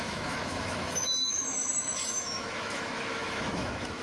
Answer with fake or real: fake